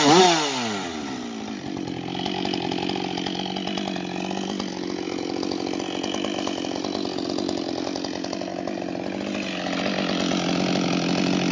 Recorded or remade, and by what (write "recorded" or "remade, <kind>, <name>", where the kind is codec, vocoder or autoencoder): recorded